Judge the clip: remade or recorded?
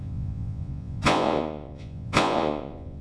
remade